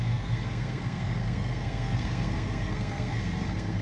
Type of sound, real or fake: fake